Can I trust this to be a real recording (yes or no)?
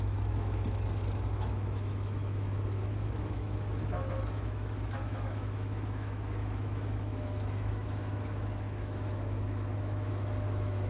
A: no